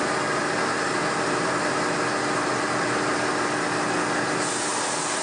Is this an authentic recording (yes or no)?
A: yes